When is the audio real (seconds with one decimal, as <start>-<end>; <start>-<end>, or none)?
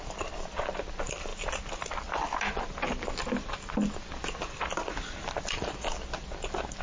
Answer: 0.0-6.8